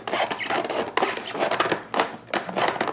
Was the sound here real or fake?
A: fake